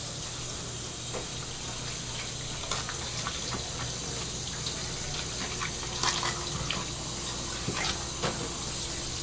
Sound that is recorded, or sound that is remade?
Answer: recorded